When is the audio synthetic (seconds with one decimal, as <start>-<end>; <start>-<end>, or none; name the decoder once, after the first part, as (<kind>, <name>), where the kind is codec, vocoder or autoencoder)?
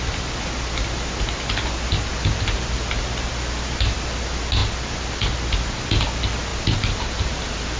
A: 6.5-7.8 (vocoder, BigVGAN v2)